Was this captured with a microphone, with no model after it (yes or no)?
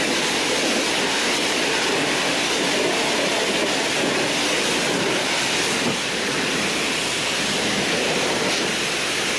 yes